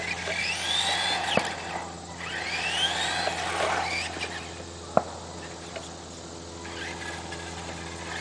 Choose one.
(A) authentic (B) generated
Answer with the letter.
A